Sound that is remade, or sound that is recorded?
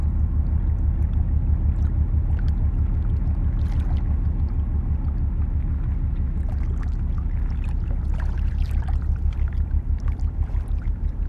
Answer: recorded